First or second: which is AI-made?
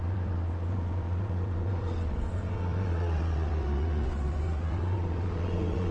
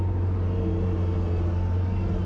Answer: first